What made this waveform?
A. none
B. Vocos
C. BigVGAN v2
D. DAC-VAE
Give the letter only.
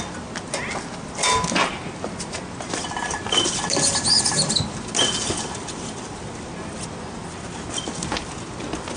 A